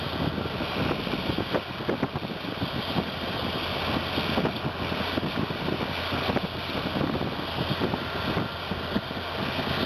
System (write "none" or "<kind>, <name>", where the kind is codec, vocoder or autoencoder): none